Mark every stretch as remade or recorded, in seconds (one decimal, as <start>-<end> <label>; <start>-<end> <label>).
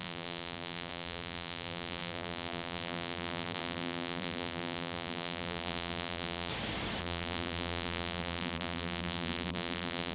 0.0-6.5 remade; 6.5-7.0 recorded; 7.0-10.1 remade